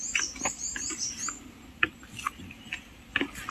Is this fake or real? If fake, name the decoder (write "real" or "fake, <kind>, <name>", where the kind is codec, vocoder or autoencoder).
real